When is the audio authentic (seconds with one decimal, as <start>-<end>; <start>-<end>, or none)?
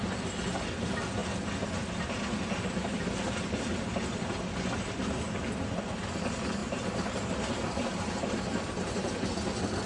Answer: 0.0-6.6; 9.1-9.9